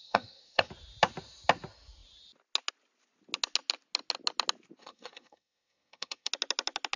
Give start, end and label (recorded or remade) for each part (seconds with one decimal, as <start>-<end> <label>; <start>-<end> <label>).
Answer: 0.0-0.7 remade; 0.7-4.8 recorded; 4.8-6.3 remade; 6.3-7.0 recorded